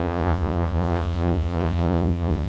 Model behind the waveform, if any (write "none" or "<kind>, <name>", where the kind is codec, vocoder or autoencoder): vocoder, Vocos